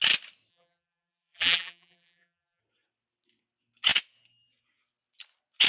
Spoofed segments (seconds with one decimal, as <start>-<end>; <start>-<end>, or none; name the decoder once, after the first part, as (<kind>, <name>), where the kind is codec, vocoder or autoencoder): 0.5-2.6 (vocoder, BigVGAN v2)